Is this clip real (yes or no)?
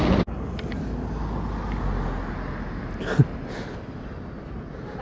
yes